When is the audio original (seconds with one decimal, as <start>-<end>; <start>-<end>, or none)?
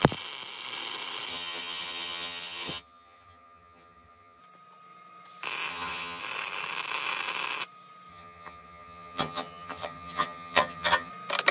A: 0.0-1.3; 4.4-5.7; 6.2-8.1; 11.1-11.5